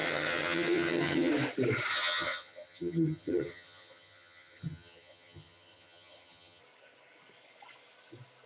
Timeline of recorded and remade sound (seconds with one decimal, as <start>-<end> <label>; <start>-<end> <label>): 0.0-1.3 remade; 1.3-1.9 recorded; 1.9-6.6 remade; 6.6-8.5 recorded